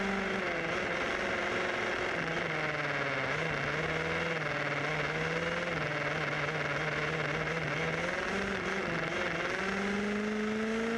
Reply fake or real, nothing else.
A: real